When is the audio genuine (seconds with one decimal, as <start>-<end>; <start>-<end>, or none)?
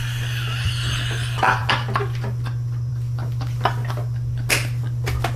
0.0-5.4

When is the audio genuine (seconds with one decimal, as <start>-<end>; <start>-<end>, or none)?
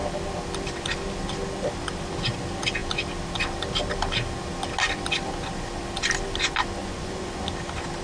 0.0-6.8; 7.4-8.0